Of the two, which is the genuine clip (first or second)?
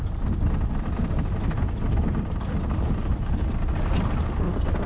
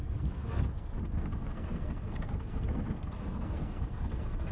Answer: first